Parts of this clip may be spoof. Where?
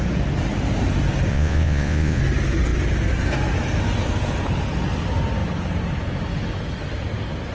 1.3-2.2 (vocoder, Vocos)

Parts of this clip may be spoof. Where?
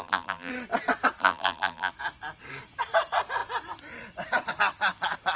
0.0-0.5 (vocoder, BigVGAN v2); 1.2-1.9